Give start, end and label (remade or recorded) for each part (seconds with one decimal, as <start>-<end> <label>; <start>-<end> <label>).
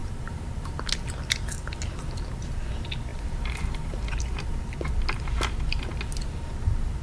0.0-0.8 remade; 0.8-3.1 recorded; 3.1-4.6 remade; 4.6-7.0 recorded